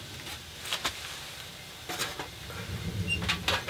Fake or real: real